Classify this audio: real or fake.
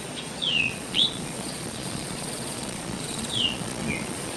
fake